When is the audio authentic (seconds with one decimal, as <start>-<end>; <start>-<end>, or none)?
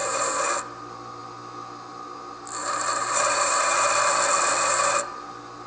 0.5-2.6; 3.9-5.7